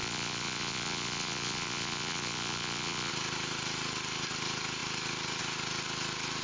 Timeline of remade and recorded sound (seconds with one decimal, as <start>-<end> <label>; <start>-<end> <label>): 0.0-3.1 remade; 3.1-6.4 recorded

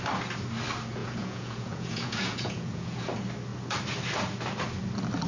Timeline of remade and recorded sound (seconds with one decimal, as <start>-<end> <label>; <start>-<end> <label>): 0.0-1.0 recorded; 1.0-3.1 remade; 3.1-5.3 recorded

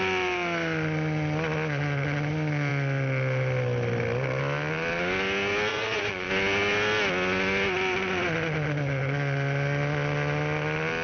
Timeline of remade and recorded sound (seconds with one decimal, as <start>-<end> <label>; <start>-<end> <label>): 0.0-5.7 recorded; 5.7-6.3 remade; 6.3-11.0 recorded

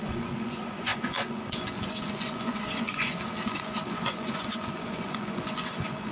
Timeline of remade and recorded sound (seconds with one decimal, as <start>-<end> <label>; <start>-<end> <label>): 0.0-6.1 remade

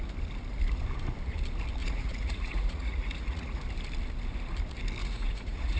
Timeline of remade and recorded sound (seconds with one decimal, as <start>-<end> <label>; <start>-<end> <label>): 0.0-1.8 recorded; 1.8-3.6 remade; 3.6-5.0 recorded; 5.0-5.8 remade

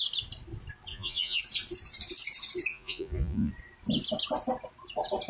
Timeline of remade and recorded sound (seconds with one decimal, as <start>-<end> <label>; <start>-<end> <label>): 0.0-0.9 recorded; 0.9-1.4 remade; 1.4-2.7 recorded; 2.7-3.5 remade; 3.5-5.3 recorded